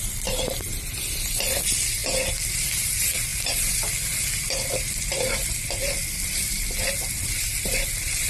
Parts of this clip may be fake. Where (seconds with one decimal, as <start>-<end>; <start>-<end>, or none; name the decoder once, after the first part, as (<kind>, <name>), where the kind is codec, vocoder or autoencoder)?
0.0-2.0 (vocoder, BigVGAN v2); 2.6-8.3